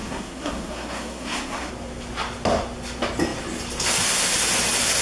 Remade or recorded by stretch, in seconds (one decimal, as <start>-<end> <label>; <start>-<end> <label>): 0.0-1.7 remade; 1.7-5.0 recorded